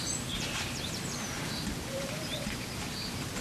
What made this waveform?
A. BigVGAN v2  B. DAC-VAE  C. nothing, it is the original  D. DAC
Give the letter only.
A